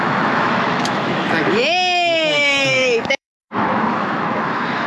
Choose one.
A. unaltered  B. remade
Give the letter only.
B